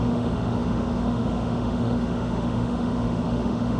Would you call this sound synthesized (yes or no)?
yes